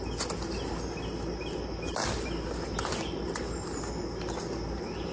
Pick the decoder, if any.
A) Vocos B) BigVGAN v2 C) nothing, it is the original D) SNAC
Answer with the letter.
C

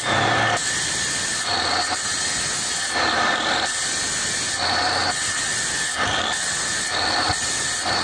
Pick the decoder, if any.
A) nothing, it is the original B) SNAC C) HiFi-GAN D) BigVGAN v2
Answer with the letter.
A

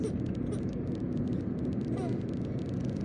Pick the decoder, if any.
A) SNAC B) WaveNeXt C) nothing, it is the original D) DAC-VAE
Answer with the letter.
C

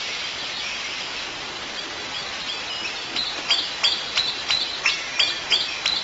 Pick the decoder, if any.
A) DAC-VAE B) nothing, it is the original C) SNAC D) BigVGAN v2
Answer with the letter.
B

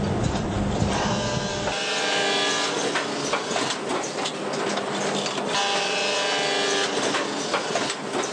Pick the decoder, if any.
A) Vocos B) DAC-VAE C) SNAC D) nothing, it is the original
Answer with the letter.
D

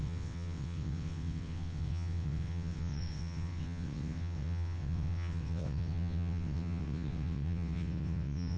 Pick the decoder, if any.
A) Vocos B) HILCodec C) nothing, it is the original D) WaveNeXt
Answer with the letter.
D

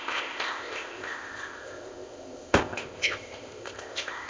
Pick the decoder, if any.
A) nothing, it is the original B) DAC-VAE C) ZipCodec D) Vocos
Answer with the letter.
C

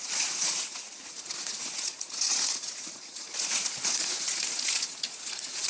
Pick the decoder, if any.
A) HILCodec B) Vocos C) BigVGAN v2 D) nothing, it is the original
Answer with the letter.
B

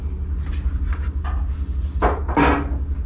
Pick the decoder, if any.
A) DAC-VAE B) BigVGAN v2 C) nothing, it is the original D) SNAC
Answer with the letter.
C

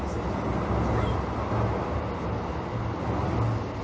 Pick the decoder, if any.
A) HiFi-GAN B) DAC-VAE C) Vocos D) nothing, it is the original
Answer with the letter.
D